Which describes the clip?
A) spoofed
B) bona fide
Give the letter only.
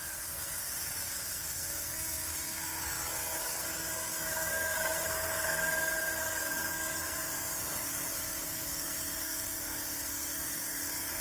A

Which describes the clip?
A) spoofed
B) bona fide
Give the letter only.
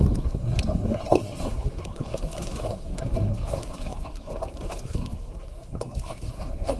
A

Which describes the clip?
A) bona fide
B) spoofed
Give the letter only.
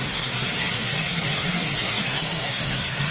B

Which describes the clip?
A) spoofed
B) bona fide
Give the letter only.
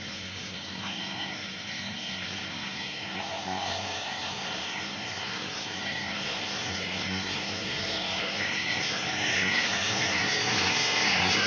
A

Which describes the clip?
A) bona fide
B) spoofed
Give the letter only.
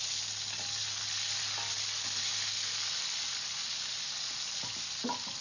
A